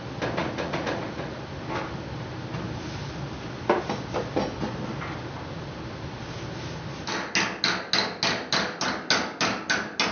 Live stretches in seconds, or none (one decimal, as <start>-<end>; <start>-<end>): 0.0-0.4; 1.4-10.1